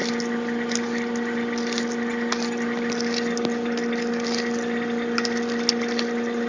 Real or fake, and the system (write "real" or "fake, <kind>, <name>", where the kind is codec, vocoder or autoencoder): real